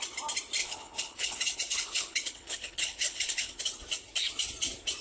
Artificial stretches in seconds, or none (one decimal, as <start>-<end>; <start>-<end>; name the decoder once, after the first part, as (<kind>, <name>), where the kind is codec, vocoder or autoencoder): 0.6-3.6 (codec, HILCodec)